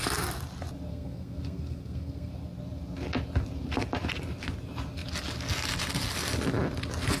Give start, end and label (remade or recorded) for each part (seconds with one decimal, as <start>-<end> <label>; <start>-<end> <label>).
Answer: 0.0-0.9 recorded; 0.9-2.3 remade; 2.3-7.2 recorded